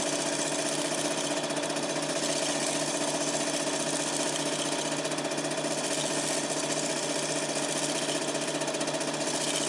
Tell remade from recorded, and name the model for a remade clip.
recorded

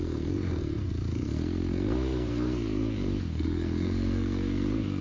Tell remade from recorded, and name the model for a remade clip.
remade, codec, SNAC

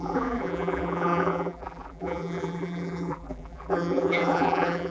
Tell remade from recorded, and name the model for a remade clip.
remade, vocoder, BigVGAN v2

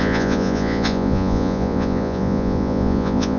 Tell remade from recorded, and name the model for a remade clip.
remade, vocoder, Vocos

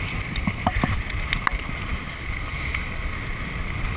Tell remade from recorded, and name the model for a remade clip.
recorded